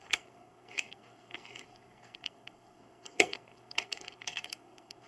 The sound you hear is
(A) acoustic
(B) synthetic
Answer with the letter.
B